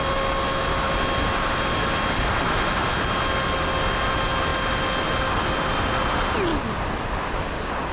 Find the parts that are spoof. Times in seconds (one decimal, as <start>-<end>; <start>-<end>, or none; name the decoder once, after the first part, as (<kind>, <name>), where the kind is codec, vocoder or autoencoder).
none